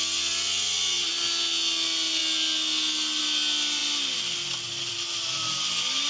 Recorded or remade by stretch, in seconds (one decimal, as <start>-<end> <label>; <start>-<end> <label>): 0.0-6.1 recorded